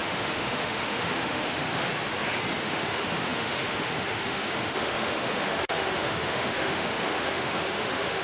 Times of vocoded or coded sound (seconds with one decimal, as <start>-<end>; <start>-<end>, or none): 0.0-1.9; 2.6-8.2